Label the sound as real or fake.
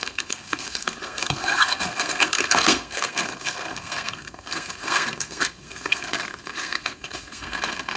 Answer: fake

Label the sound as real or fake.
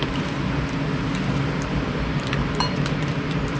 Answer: real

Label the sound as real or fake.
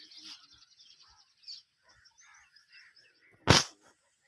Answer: real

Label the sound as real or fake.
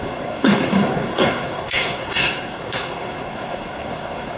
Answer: fake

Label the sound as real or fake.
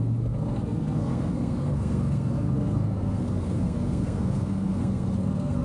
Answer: fake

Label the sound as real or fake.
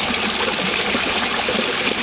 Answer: real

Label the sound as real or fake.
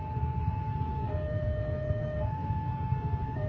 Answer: fake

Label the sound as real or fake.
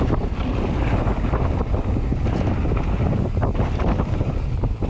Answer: real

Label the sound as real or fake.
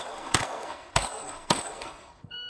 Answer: fake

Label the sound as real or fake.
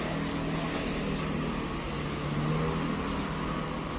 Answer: real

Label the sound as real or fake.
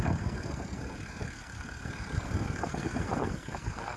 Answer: fake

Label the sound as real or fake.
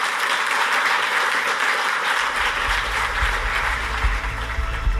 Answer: real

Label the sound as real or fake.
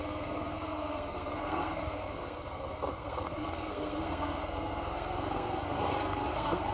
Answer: fake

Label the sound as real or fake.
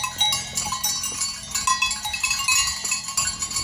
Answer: real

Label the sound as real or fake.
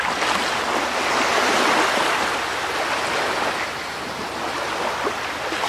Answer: real